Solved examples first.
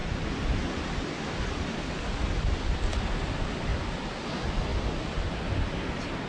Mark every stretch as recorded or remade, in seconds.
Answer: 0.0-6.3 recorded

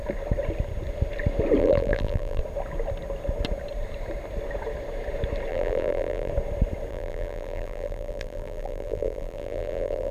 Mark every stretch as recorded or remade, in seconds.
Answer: 0.0-1.6 recorded; 1.6-2.4 remade; 2.4-5.5 recorded; 5.5-6.3 remade; 6.3-6.9 recorded; 6.9-10.1 remade

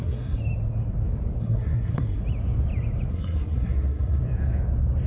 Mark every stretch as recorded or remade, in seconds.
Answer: 0.0-0.4 remade; 0.4-1.4 recorded; 1.4-2.2 remade; 2.2-3.1 recorded; 3.1-4.2 remade; 4.2-5.1 recorded

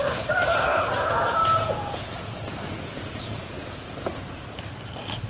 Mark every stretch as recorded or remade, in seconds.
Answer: 0.0-0.7 recorded; 0.7-3.9 remade; 3.9-5.3 recorded

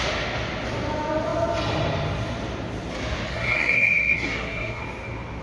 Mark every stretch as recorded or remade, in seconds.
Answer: 0.0-3.3 recorded; 3.3-4.8 remade; 4.8-5.4 recorded

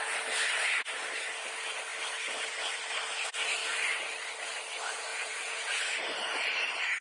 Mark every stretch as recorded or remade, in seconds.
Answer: 0.0-5.1 recorded; 5.1-5.9 remade; 5.9-7.0 recorded